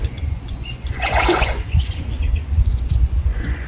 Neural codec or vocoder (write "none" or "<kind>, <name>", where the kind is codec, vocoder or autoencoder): vocoder, Vocos